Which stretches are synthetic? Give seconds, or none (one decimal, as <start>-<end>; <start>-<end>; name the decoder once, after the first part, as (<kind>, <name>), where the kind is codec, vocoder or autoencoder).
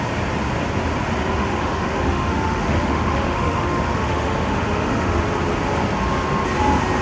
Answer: 1.4-5.2 (autoencoder, DAC-VAE)